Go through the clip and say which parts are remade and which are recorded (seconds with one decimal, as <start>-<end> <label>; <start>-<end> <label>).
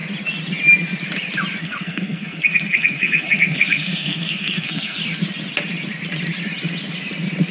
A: 0.0-1.6 recorded; 1.6-5.0 remade; 5.0-7.5 recorded